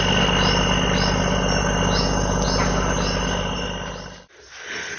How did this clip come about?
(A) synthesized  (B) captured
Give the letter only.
B